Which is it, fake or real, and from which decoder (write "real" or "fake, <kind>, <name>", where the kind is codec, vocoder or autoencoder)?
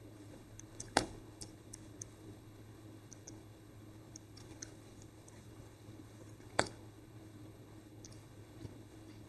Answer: fake, codec, HILCodec